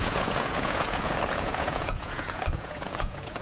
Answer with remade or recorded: remade